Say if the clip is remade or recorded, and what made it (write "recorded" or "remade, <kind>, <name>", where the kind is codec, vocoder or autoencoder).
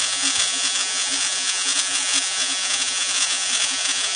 remade, vocoder, Vocos